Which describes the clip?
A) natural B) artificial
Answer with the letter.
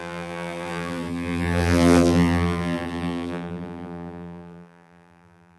B